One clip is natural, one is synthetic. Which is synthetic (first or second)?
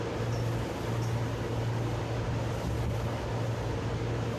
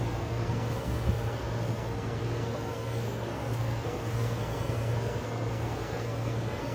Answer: second